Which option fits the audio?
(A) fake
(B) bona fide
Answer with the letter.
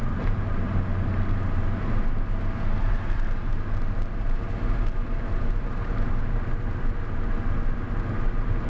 B